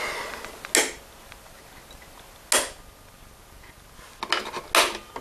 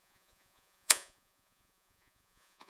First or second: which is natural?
first